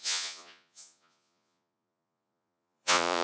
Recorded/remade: remade